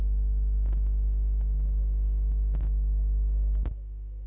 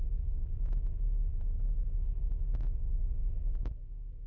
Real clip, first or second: first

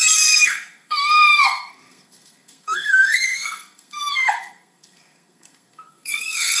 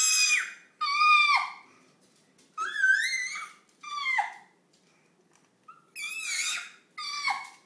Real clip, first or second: second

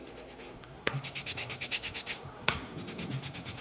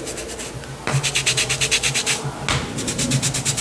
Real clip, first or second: second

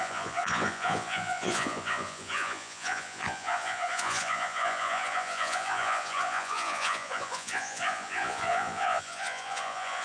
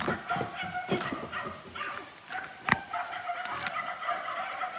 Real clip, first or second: second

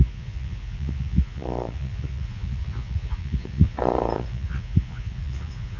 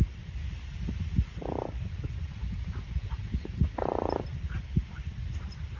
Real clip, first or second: second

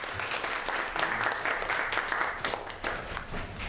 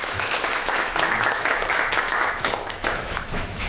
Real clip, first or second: first